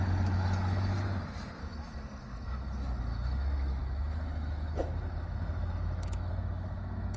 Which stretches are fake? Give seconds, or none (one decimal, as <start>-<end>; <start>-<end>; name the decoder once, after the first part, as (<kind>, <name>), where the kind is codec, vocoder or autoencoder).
0.0-0.9 (autoencoder, DAC-VAE); 1.6-7.2